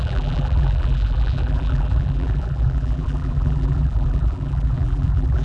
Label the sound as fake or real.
fake